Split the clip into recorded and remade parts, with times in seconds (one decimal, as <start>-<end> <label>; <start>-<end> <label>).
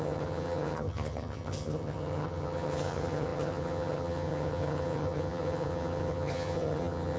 0.0-7.2 remade